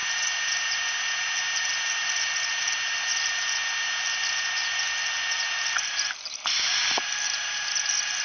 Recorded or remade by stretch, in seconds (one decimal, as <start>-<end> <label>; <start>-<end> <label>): 0.0-8.2 recorded